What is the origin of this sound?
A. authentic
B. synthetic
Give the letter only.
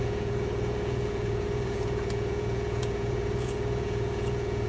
B